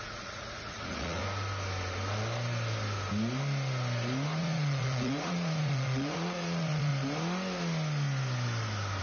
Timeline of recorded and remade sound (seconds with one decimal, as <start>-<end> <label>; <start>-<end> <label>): 0.0-1.2 remade; 1.2-4.4 recorded; 4.4-6.9 remade; 6.9-9.0 recorded